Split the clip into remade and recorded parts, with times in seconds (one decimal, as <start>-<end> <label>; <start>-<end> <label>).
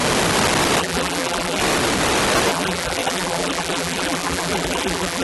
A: 0.0-0.8 recorded; 0.8-1.6 remade; 1.6-2.5 recorded; 2.5-5.2 remade